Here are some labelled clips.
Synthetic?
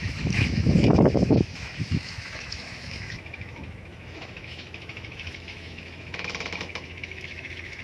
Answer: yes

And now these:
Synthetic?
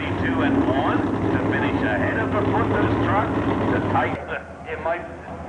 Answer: no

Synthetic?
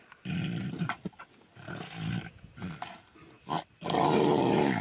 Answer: no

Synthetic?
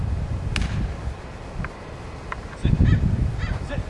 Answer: no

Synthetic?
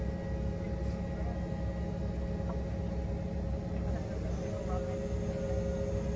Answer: no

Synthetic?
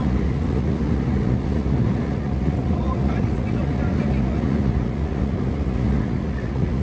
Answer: yes